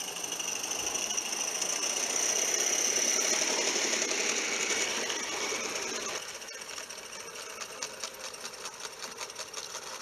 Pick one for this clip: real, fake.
real